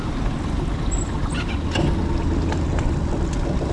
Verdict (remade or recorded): recorded